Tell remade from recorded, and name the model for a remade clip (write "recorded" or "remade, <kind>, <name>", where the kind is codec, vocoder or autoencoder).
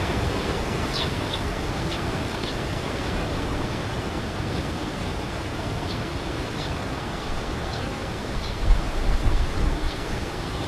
remade, codec, SNAC